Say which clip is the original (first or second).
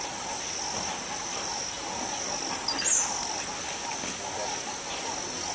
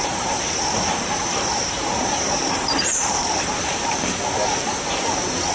first